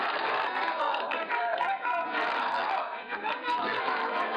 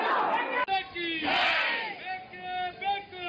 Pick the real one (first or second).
second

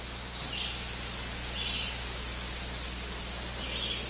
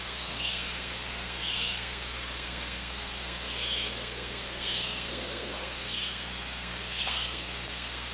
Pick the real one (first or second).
first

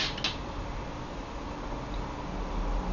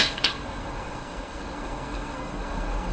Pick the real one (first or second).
first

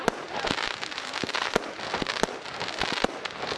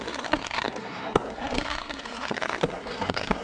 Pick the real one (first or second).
first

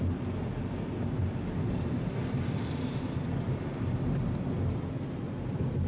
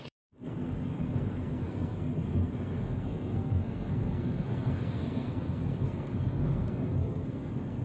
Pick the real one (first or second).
first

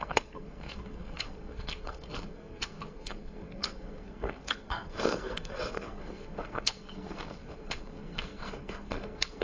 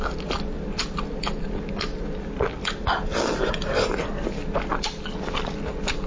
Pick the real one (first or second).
second